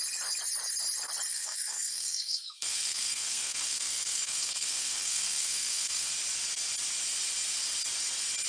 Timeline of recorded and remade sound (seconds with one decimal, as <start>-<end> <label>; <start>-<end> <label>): 0.0-1.3 recorded; 1.3-6.1 remade; 6.1-8.5 recorded